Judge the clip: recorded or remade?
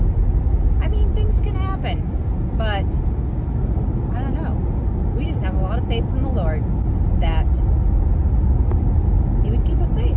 recorded